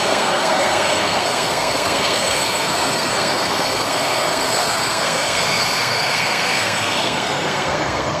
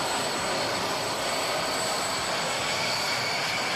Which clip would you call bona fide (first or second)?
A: second